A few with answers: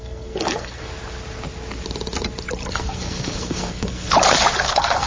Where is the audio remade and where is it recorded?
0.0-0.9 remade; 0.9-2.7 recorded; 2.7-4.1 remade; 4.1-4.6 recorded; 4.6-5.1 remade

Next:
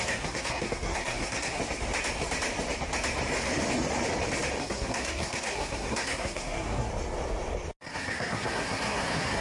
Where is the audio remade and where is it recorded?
0.0-1.6 remade; 1.6-4.6 recorded; 4.6-6.9 remade; 6.9-7.9 recorded; 7.9-9.4 remade

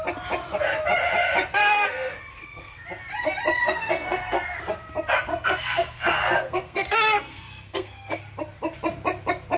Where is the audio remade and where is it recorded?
0.0-1.6 recorded; 1.6-2.8 remade; 2.8-3.6 recorded; 3.6-4.6 remade; 4.6-5.3 recorded; 5.3-8.2 remade; 8.2-9.6 recorded

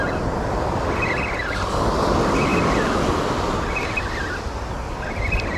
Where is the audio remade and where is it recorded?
0.0-5.6 recorded

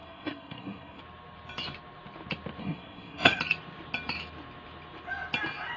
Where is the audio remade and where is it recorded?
0.0-1.0 remade; 1.0-2.6 recorded; 2.6-3.4 remade; 3.4-5.8 recorded